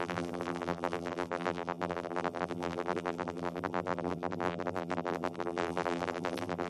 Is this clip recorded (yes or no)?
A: no